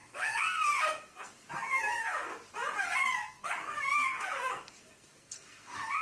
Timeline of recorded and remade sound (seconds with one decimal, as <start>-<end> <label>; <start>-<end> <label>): 0.0-2.3 remade; 2.3-2.8 recorded; 2.8-6.0 remade

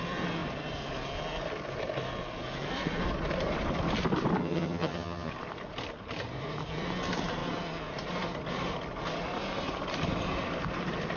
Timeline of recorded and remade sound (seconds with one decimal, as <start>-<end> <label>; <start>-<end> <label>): 0.0-4.4 recorded; 4.4-5.3 remade; 5.3-11.2 recorded